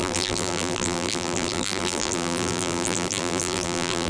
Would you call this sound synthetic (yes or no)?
yes